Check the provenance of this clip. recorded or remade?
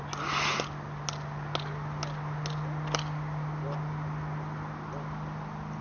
recorded